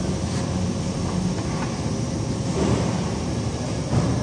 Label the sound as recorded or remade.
recorded